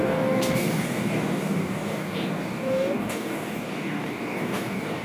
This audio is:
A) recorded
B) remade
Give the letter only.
B